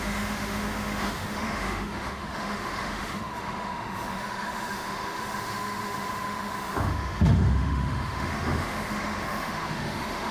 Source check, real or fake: fake